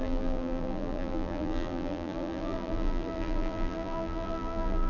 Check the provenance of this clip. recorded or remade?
remade